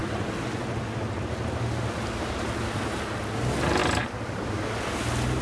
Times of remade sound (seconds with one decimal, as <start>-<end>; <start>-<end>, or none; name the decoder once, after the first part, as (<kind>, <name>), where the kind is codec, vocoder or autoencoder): none

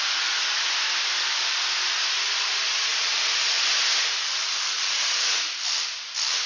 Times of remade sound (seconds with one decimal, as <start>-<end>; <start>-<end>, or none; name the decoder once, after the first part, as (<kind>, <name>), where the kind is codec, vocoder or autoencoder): none